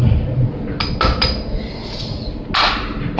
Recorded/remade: recorded